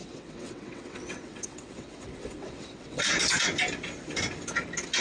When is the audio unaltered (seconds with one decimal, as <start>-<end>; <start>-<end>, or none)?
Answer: 3.0-5.0